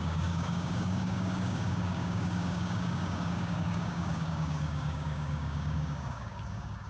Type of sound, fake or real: fake